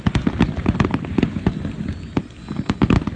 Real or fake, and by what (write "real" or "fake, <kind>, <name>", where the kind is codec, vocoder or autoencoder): real